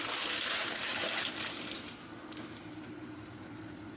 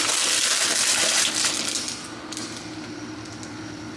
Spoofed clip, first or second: first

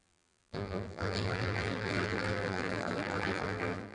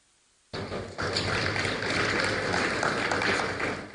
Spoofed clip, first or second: first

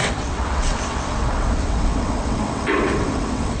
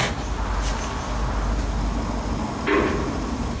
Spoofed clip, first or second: first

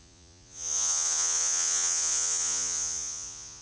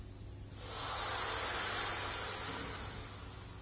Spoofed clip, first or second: first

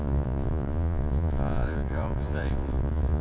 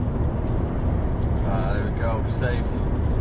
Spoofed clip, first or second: first